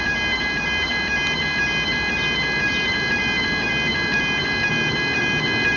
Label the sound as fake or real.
real